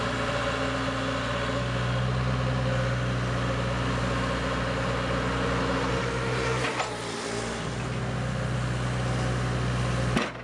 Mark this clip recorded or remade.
recorded